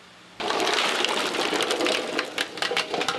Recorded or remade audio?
recorded